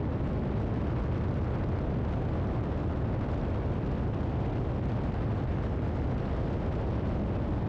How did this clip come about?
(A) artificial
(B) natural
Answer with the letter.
B